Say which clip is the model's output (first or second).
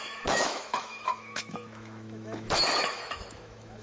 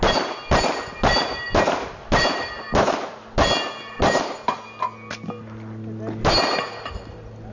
first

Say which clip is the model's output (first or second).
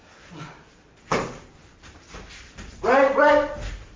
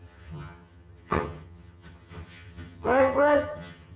second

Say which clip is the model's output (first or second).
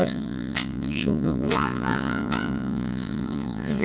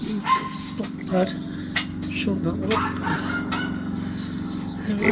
first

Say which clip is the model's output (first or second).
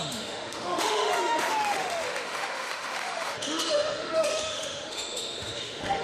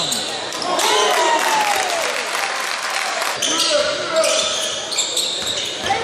first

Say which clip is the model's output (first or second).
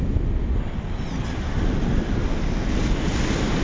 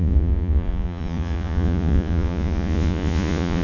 second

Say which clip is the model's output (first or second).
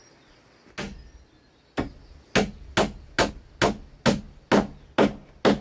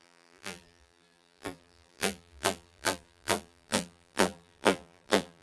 second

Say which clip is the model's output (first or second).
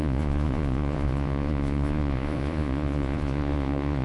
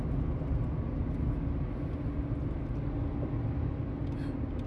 first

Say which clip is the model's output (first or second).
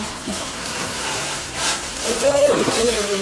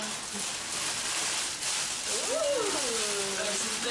first